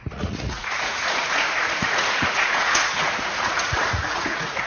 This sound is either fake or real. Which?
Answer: fake